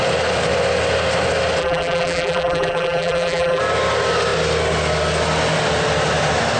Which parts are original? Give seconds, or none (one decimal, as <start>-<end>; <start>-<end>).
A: 0.0-1.6; 3.6-6.6